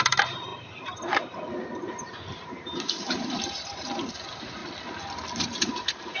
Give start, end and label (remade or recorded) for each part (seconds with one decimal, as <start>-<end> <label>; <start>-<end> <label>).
0.0-4.6 remade; 4.6-5.6 recorded; 5.6-6.2 remade